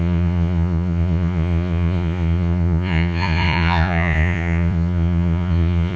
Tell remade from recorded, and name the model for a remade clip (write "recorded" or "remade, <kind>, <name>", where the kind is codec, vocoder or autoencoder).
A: remade, vocoder, Vocos